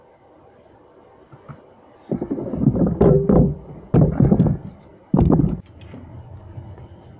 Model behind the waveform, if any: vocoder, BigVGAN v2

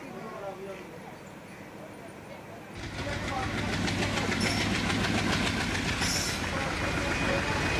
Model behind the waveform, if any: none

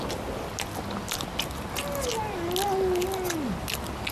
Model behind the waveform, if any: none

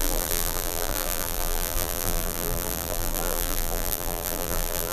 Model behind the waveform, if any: vocoder, BigVGAN v2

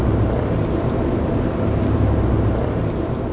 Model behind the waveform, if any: vocoder, BigVGAN v2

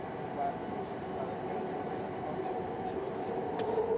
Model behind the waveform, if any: none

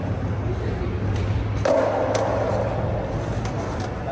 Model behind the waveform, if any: none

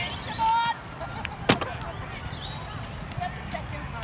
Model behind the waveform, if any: none